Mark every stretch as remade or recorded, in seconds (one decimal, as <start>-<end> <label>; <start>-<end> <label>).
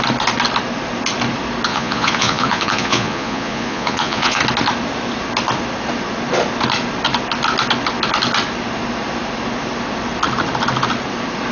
0.0-1.7 recorded; 1.7-4.4 remade; 4.4-11.5 recorded